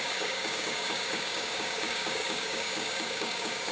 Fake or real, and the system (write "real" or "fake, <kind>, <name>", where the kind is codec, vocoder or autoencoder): fake, codec, DAC